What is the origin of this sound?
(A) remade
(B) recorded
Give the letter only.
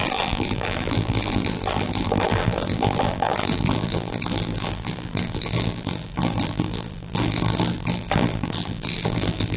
A